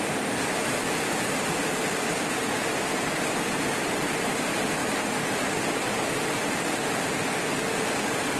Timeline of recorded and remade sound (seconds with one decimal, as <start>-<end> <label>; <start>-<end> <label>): 0.0-8.4 recorded